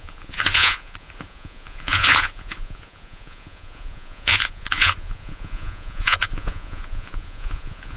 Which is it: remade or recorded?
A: remade